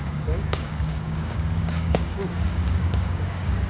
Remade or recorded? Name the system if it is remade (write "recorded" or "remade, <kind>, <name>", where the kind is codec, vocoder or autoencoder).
remade, codec, DAC